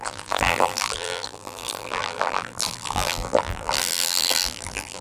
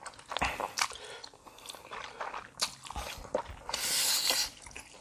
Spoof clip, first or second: first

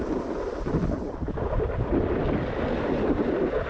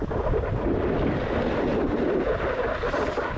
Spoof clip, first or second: first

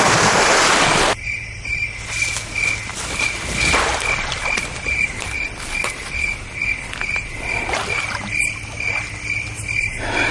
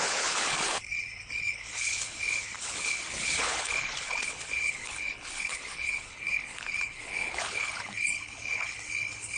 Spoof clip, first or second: second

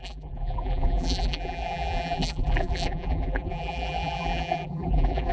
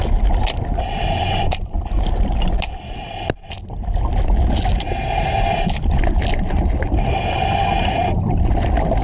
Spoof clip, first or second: first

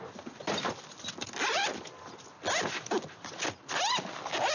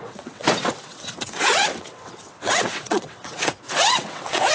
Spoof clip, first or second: second